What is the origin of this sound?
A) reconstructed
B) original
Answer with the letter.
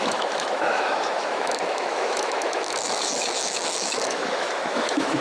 A